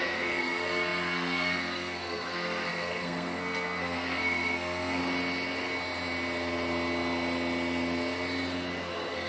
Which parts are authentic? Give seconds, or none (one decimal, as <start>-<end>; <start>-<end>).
5.0-8.9